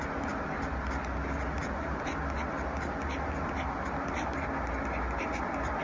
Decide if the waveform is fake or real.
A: real